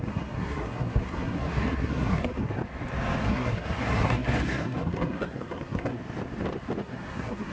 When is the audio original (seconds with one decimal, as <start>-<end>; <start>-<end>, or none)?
2.6-3.2; 6.0-6.8